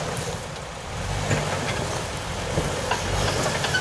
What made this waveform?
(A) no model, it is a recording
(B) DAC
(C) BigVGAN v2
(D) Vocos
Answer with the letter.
A